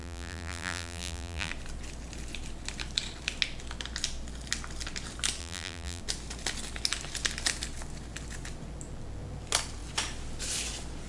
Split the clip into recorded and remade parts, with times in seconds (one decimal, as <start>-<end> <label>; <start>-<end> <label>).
0.0-1.5 remade; 1.5-5.4 recorded; 5.4-6.0 remade; 6.0-11.1 recorded